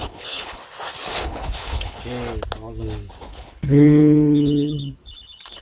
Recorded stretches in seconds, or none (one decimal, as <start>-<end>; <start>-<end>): 0.6-1.1; 2.0-3.3